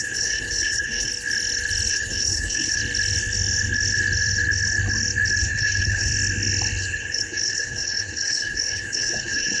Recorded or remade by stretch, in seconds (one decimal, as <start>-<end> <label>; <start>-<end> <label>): 0.0-1.1 remade; 1.1-1.9 recorded; 1.9-2.8 remade; 2.8-5.4 recorded; 5.4-6.1 remade; 6.1-6.8 recorded; 6.8-9.6 remade